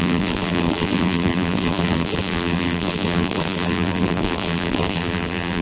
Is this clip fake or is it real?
fake